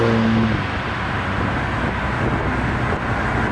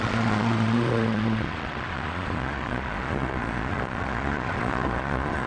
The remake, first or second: second